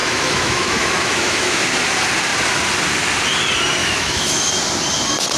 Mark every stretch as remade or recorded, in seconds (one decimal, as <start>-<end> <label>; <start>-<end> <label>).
0.0-1.6 remade; 1.6-3.8 recorded; 3.8-4.5 remade; 4.5-5.4 recorded